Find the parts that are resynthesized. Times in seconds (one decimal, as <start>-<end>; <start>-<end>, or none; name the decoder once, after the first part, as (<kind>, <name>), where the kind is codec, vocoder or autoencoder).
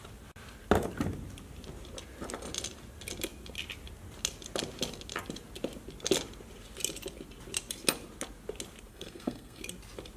8.9-9.6 (codec, SNAC)